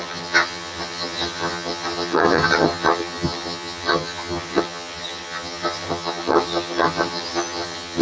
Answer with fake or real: fake